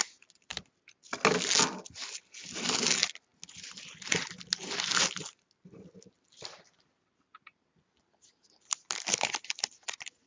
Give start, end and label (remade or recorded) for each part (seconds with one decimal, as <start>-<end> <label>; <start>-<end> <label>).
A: 0.0-10.3 recorded